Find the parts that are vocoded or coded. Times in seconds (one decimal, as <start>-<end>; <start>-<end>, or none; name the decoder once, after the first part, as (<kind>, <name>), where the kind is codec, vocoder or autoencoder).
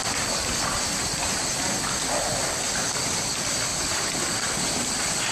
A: none